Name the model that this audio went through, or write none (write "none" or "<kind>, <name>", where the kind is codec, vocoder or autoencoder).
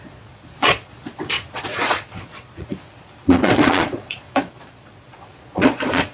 vocoder, Vocos